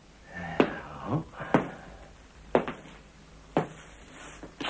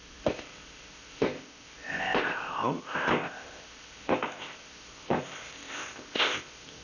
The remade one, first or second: second